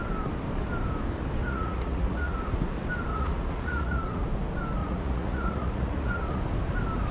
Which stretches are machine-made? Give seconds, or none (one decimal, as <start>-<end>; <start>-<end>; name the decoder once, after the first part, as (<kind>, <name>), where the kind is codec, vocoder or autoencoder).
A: 1.4-2.4 (vocoder, Vocos); 3.1-4.3; 4.8-6.4